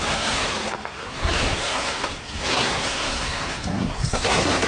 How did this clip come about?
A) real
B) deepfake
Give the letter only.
B